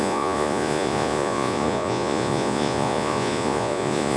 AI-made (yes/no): yes